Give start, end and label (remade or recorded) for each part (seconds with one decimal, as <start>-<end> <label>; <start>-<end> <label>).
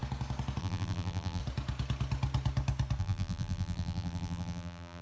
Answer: 0.0-0.6 recorded; 0.6-1.4 remade; 1.4-3.0 recorded; 3.0-5.0 remade